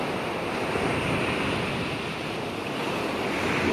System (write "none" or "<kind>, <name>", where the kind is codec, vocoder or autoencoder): none